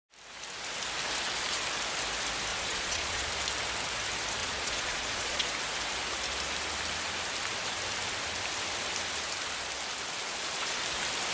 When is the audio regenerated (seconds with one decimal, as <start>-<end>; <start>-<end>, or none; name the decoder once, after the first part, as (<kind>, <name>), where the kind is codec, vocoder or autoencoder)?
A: 2.5-3.3 (vocoder, Vocos); 4.4-5.5; 10.3-10.8